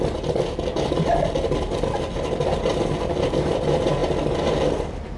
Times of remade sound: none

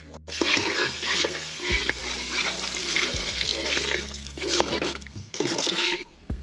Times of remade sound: 0.0-2.0 (codec, SNAC); 2.8-6.4

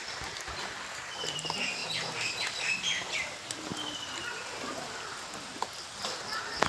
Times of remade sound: none

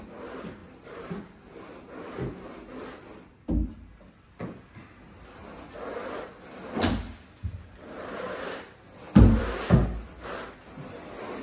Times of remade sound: none

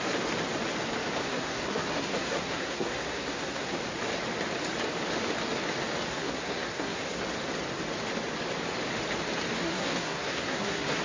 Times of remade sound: 1.2-3.8 (codec, SNAC); 6.1-7.2; 9.6-11.0

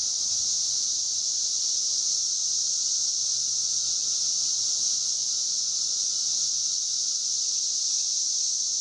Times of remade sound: 2.1-2.5 (vocoder, Vocos); 4.8-8.8

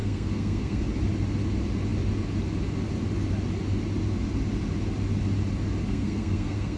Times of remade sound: 0.0-0.8 (codec, SNAC); 5.9-6.8